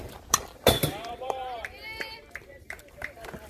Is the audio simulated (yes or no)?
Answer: yes